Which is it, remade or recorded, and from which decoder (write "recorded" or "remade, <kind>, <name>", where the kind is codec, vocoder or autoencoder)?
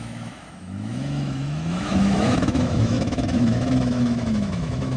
remade, autoencoder, DAC-VAE